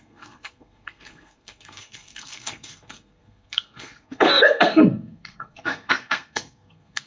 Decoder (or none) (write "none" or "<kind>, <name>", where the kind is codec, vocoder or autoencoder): codec, SNAC